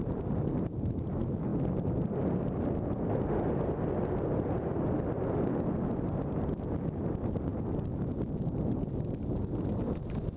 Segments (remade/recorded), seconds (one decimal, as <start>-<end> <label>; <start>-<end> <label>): 0.0-10.4 recorded

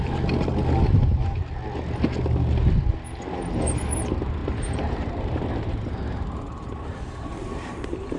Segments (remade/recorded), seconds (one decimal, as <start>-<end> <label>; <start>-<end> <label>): 0.0-4.4 recorded; 4.4-8.2 remade

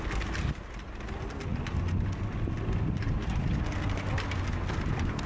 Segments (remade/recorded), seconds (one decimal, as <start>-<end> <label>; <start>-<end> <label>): 0.0-5.3 recorded

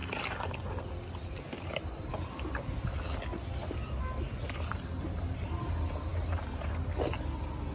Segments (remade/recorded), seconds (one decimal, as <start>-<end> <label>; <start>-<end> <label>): 0.0-6.1 recorded; 6.1-6.7 remade; 6.7-7.7 recorded

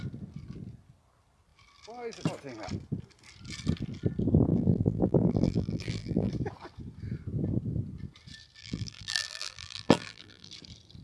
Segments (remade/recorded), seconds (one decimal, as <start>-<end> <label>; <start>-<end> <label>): 0.0-4.5 recorded; 4.5-6.3 remade; 6.3-8.6 recorded; 8.6-10.5 remade; 10.5-11.0 recorded

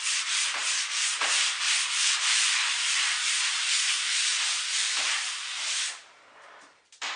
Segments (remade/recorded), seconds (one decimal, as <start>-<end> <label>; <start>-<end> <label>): 0.0-7.2 remade